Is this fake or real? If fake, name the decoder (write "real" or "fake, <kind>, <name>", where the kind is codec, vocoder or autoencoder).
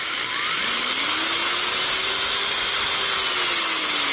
real